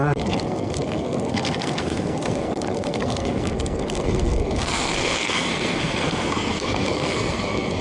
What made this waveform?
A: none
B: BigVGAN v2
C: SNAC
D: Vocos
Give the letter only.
C